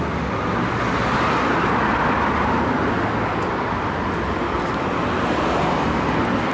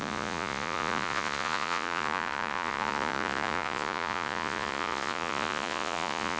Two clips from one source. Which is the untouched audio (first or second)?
first